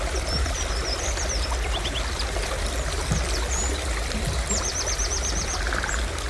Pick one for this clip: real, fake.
fake